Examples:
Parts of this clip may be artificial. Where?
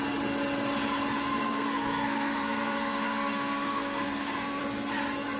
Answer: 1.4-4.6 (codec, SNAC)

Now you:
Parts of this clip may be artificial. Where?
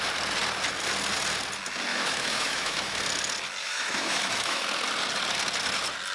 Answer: 1.9-3.0 (autoencoder, DAC-VAE); 3.6-4.6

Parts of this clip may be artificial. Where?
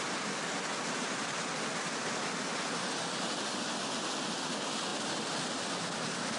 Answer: none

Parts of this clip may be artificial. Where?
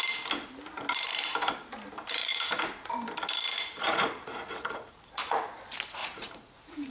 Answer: 2.3-2.9 (vocoder, Vocos); 3.8-5.5; 6.0-6.9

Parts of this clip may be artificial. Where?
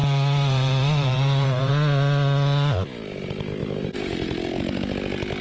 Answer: 0.0-1.7 (vocoder, BigVGAN v2); 3.6-4.6